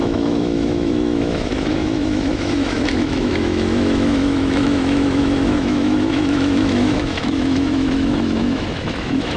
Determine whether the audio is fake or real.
fake